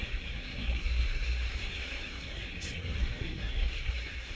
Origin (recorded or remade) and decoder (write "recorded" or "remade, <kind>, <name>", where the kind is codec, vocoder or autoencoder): remade, codec, SNAC